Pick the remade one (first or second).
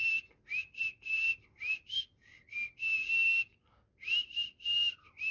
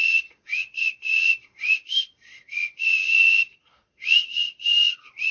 second